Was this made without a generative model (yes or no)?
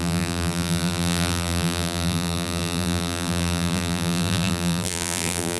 no